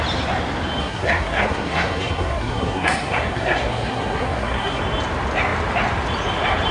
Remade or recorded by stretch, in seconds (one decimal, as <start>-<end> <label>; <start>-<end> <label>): 0.0-0.8 recorded; 0.8-4.8 remade; 4.8-6.7 recorded